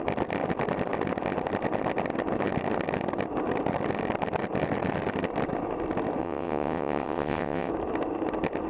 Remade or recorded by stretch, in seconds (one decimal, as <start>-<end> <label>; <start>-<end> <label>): 0.0-6.2 recorded; 6.2-7.7 remade; 7.7-8.7 recorded